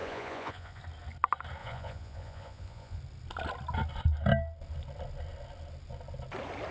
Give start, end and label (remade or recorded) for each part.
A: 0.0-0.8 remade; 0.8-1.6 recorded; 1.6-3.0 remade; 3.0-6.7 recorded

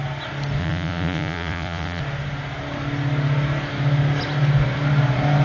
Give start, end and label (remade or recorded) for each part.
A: 0.0-0.6 recorded; 0.6-2.0 remade; 2.0-5.4 recorded

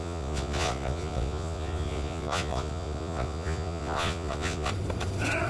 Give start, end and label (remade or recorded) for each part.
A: 0.0-4.7 remade; 4.7-5.5 recorded

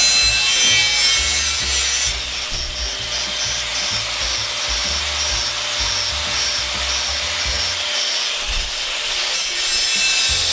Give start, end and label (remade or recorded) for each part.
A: 0.0-10.5 recorded